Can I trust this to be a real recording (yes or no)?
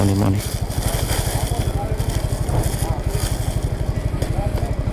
yes